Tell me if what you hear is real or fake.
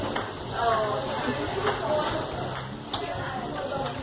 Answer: real